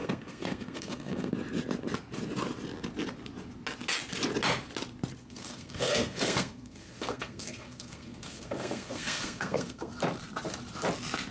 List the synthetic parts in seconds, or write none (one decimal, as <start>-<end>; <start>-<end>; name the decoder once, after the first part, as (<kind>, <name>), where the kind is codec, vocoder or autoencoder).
0.0-1.3 (codec, SNAC); 5.2-9.9